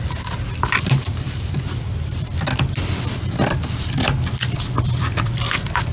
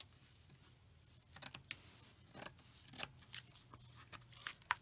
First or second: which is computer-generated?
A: first